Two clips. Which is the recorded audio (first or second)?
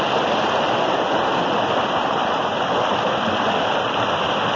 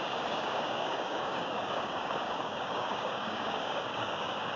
first